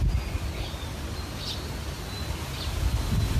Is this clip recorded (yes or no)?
yes